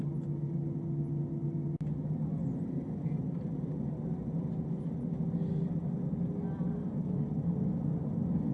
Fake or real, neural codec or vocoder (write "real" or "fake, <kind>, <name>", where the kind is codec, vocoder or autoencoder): real